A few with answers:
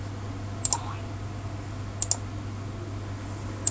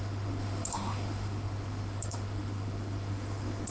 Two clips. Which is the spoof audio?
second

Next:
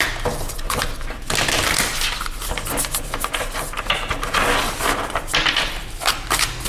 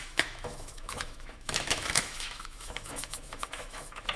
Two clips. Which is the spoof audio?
second